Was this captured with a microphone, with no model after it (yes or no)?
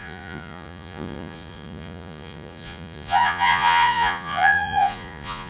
no